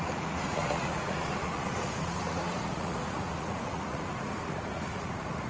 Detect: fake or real fake